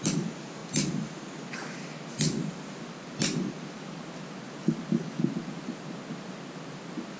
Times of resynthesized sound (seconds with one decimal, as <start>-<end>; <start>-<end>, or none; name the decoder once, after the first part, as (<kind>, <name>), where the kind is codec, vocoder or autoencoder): none